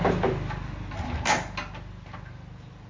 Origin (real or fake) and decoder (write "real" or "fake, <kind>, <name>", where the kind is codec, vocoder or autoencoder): real